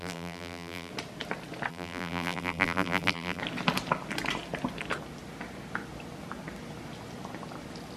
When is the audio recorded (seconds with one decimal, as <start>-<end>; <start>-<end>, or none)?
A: 0.9-1.7; 3.4-8.0